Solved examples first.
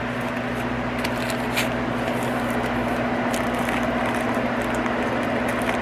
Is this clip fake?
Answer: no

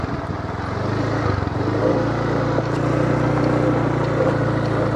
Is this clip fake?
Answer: no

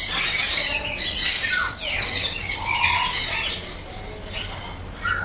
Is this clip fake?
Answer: no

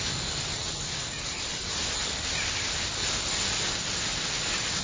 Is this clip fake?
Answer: no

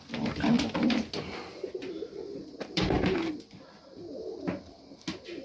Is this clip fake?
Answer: no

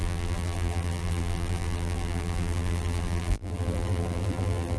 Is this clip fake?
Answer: yes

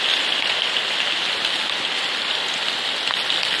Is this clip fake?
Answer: no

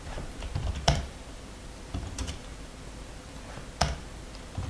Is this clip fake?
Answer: yes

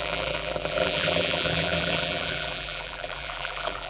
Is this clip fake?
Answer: yes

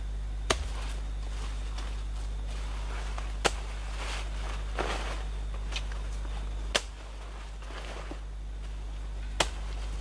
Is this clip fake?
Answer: no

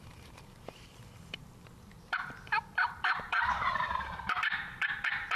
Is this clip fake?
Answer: yes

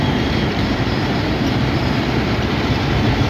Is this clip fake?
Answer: yes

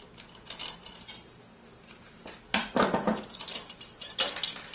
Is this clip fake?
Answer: yes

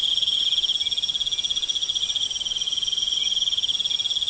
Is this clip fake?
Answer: no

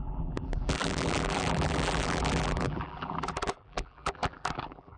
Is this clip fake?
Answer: yes